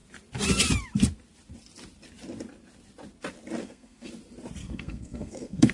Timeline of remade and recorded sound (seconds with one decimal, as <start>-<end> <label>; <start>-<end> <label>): 0.0-3.6 recorded; 3.6-4.1 remade; 4.1-4.6 recorded; 4.6-5.7 remade